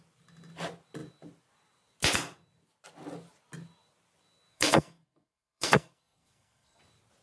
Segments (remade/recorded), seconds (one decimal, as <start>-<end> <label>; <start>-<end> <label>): 0.0-4.5 recorded; 4.5-6.8 remade; 6.8-7.2 recorded